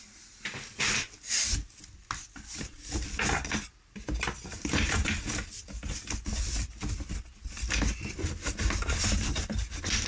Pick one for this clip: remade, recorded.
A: recorded